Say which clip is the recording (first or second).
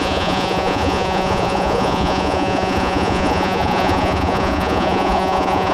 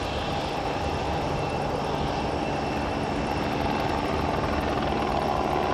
second